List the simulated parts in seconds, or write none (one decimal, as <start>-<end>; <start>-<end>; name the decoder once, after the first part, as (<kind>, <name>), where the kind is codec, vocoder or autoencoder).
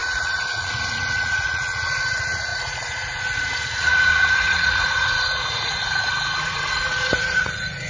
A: 0.0-7.9 (vocoder, Vocos)